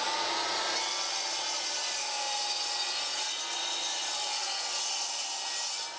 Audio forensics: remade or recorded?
recorded